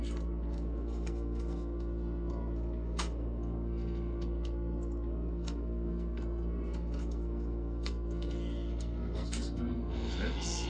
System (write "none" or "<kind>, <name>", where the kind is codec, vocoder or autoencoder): codec, SNAC